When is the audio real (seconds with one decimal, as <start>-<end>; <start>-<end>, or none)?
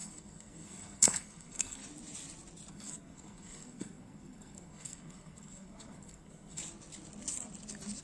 1.8-2.7; 6.6-8.0